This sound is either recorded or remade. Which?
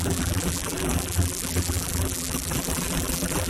remade